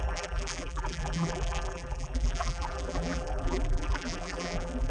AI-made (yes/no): yes